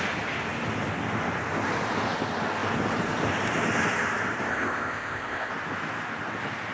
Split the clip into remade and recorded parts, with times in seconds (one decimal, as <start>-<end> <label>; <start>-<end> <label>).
0.0-4.5 recorded; 4.5-5.5 remade; 5.5-6.7 recorded